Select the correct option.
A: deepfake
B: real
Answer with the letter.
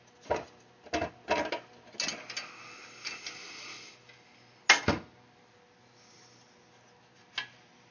B